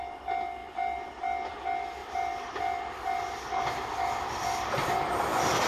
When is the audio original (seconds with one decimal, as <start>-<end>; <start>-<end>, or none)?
0.0-5.7